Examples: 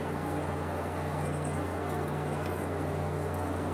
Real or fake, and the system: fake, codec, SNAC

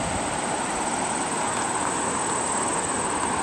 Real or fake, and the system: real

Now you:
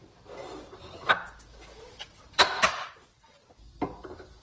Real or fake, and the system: real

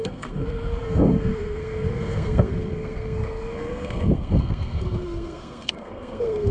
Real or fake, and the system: fake, codec, SNAC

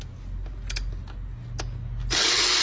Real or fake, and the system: real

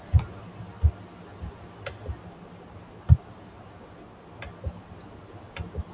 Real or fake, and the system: real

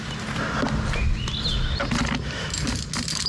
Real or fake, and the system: real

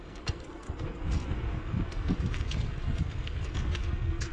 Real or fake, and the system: fake, codec, SNAC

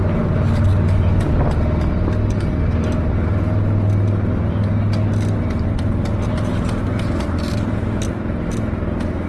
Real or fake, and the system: real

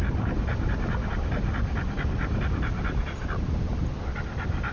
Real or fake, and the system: real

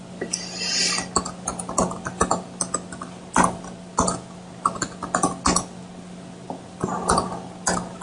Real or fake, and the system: real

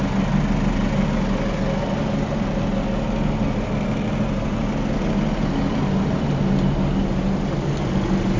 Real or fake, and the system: real